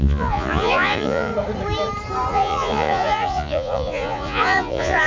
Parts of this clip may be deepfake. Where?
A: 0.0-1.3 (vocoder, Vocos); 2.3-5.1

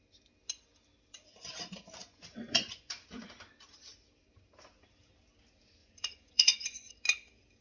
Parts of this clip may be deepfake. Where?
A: 2.0-2.9 (vocoder, Vocos); 5.8-6.9

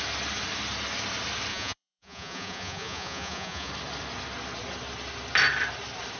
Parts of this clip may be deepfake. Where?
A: 1.5-3.7 (vocoder, Vocos)

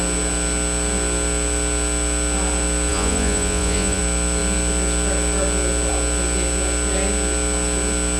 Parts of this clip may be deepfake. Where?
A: 2.9-4.0 (vocoder, Vocos)

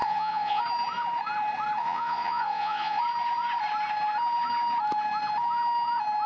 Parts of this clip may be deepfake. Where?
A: 0.0-0.6 (vocoder, Vocos); 1.8-3.0

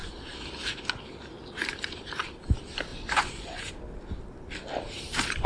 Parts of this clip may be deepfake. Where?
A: 2.9-3.6 (vocoder, Vocos)

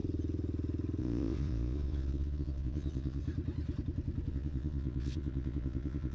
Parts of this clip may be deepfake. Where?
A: 1.0-3.2 (vocoder, Vocos); 4.3-6.1